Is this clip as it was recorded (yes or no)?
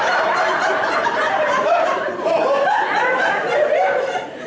no